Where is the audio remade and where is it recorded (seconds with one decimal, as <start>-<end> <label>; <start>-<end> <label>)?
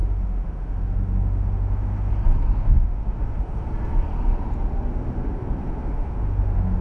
0.0-2.1 remade; 2.1-2.6 recorded; 2.6-3.7 remade; 3.7-4.9 recorded; 4.9-6.8 remade